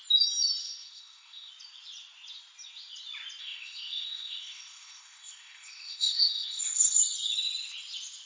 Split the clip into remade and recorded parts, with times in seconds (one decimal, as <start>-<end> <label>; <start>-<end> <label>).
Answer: 0.0-0.6 recorded; 0.6-1.5 remade; 1.5-3.4 recorded; 3.4-7.0 remade; 7.0-8.3 recorded